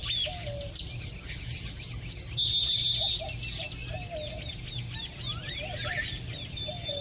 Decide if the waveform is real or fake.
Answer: real